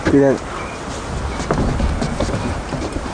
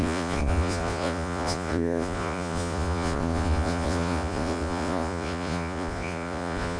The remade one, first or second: second